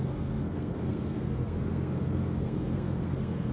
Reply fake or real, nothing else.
fake